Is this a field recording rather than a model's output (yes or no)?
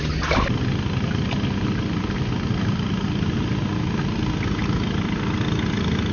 yes